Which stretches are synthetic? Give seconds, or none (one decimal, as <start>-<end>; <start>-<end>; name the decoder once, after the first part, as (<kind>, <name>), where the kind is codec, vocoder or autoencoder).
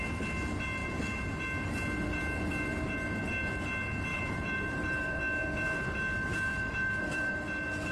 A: 0.8-1.4 (vocoder, BigVGAN v2); 4.1-5.2; 6.5-7.3